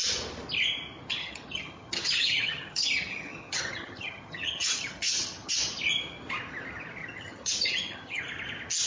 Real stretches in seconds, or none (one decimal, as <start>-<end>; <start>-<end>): 0.0-1.2; 5.5-7.0; 8.2-8.9